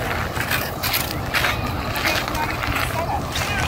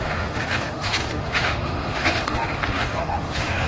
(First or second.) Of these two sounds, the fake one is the second